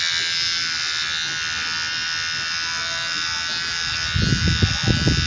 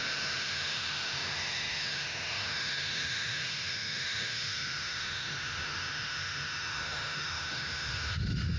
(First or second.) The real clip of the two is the first